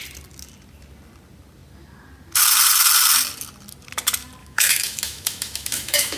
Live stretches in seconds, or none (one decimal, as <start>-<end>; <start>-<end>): 0.0-4.4